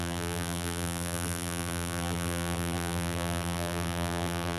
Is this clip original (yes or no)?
no